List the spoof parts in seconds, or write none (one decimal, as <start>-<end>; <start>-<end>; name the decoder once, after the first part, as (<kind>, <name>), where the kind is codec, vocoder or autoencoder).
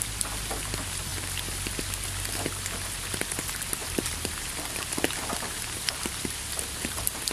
1.1-1.8 (vocoder, BigVGAN v2); 3.8-7.3